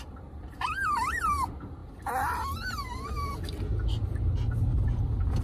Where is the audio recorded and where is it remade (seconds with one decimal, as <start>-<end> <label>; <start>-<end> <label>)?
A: 0.0-1.8 remade; 1.8-5.0 recorded; 5.0-5.4 remade